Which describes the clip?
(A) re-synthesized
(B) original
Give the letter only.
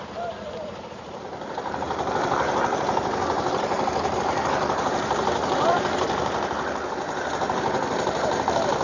A